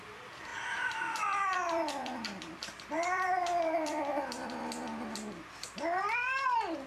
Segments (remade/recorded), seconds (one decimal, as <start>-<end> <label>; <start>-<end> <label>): 0.0-0.5 recorded; 0.5-4.6 remade; 4.6-6.9 recorded